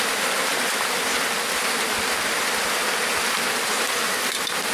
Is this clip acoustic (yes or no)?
yes